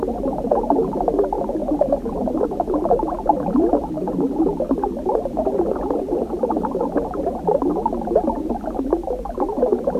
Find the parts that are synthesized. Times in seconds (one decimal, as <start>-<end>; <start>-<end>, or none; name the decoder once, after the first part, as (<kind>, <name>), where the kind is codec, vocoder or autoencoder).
none